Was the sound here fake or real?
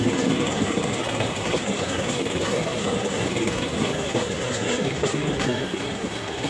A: fake